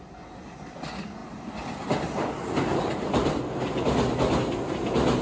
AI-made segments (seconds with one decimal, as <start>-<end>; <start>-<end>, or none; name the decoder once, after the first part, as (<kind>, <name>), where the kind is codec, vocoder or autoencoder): 2.7-3.3 (vocoder, BigVGAN v2)